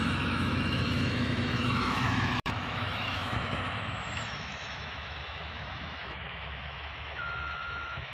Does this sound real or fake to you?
fake